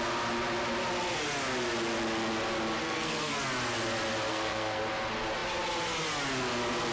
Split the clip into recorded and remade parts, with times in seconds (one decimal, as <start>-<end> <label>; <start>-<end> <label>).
0.0-2.8 recorded; 2.8-3.3 remade; 3.3-4.3 recorded; 4.3-4.8 remade; 4.8-6.9 recorded